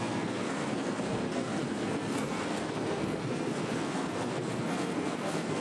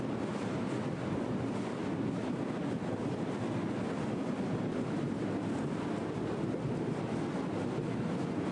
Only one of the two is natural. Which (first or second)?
second